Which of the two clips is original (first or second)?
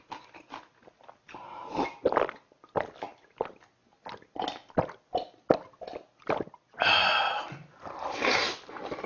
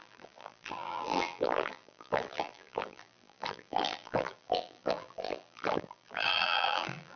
first